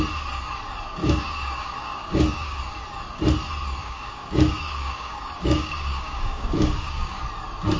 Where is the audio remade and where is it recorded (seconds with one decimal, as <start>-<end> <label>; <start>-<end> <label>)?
0.0-1.0 recorded; 1.0-2.6 remade; 2.6-3.8 recorded; 3.8-7.2 remade; 7.2-7.8 recorded